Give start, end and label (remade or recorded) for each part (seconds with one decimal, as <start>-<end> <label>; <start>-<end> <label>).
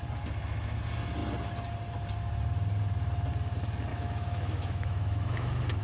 0.0-3.9 recorded; 3.9-5.8 remade